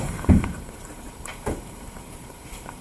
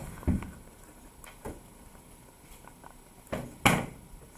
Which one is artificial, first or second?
first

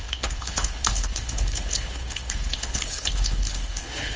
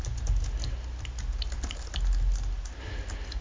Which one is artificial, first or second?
first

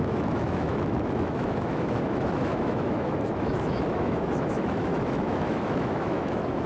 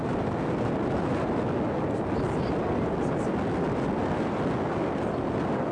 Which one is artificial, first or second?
first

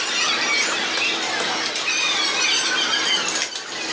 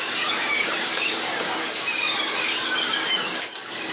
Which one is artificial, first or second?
second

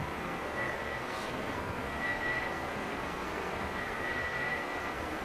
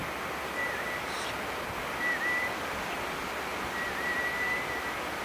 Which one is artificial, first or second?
first